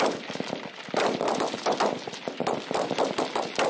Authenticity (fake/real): real